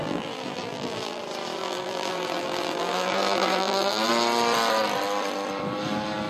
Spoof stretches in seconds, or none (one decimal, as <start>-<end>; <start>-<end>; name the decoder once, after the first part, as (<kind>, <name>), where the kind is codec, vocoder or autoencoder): 0.0-1.2 (vocoder, BigVGAN v2); 1.6-4.1